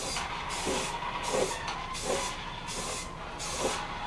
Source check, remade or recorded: recorded